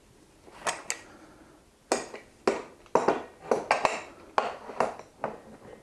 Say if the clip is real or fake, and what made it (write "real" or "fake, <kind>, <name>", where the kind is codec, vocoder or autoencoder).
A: real